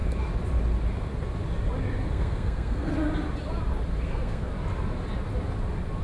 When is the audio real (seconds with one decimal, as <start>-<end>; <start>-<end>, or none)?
0.0-2.1; 2.9-4.0; 4.5-6.0